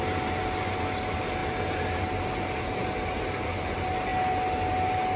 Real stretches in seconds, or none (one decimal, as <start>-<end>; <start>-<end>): 0.0-1.4; 2.0-5.2